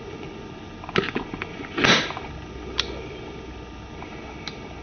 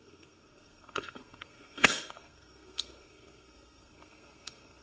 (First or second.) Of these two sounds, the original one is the first